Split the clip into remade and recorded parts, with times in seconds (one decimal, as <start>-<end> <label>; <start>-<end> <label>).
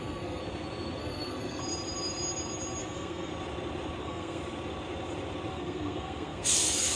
0.0-0.4 remade; 0.4-1.0 recorded; 1.0-1.6 remade; 1.6-2.8 recorded; 2.8-3.3 remade; 3.3-4.0 recorded; 4.0-4.4 remade; 4.4-5.5 recorded; 5.5-7.0 remade